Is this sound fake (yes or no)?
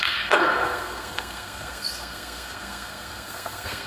yes